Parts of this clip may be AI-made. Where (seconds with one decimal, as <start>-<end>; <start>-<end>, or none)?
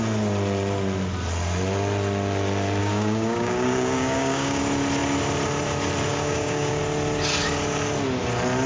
2.8-4.6; 6.1-6.8